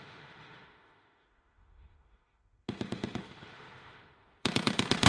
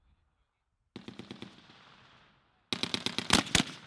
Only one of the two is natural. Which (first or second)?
second